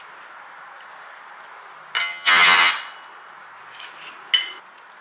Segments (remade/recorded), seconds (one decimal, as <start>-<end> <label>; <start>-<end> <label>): 0.0-2.0 recorded; 2.0-2.7 remade; 2.7-5.0 recorded